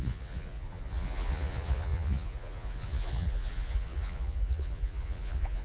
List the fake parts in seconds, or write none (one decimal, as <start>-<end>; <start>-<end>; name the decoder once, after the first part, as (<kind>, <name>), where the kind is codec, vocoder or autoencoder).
0.0-5.6 (vocoder, Vocos)